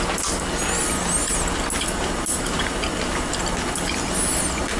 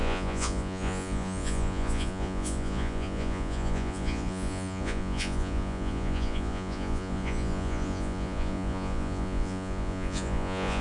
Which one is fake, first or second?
second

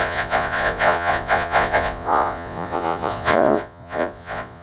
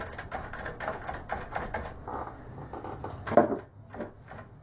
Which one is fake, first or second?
first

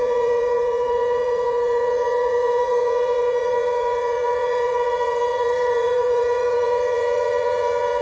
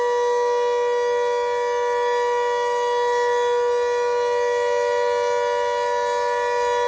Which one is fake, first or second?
first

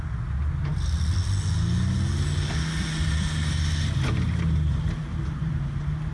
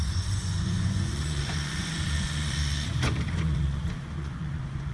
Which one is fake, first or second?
second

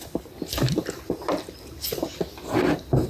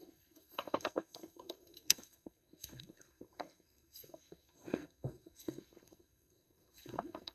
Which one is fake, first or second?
second